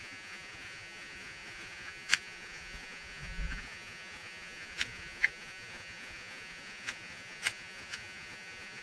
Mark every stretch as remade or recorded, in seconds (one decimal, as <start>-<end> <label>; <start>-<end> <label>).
0.0-8.8 remade

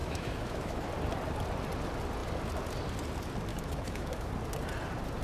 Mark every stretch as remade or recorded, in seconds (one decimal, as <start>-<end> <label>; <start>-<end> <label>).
0.0-0.9 remade; 0.9-3.5 recorded; 3.5-4.3 remade; 4.3-5.2 recorded